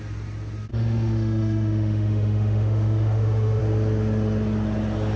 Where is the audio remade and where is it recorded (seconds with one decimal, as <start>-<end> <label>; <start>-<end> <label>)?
0.0-0.7 recorded; 0.7-3.6 remade; 3.6-5.2 recorded